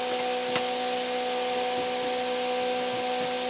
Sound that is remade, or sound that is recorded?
recorded